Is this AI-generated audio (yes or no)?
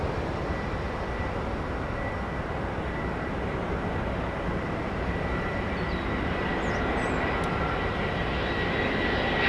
no